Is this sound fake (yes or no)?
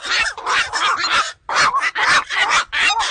no